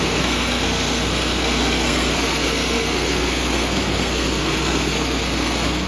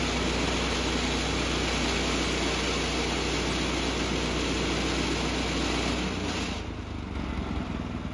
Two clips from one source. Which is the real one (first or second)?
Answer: second